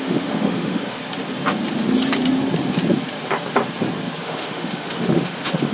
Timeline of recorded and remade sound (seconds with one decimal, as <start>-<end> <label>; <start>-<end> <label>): 0.0-1.0 remade; 1.0-4.2 recorded; 4.2-5.7 remade